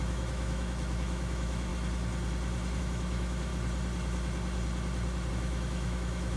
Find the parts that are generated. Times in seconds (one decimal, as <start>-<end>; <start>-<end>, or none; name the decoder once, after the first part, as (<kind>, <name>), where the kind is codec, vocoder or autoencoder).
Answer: 0.0-1.7 (autoencoder, DAC-VAE); 2.8-3.5; 5.3-6.4

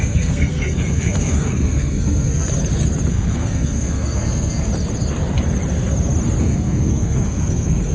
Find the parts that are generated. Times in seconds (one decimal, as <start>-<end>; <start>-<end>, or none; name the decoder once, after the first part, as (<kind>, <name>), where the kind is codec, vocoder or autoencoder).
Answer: 0.0-2.5 (codec, SNAC); 3.1-4.7; 6.4-7.9

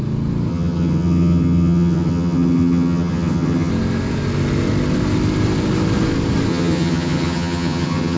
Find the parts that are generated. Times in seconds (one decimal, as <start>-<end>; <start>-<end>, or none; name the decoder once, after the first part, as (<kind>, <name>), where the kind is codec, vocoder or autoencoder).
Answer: 0.5-3.7 (vocoder, HiFi-GAN); 6.5-8.2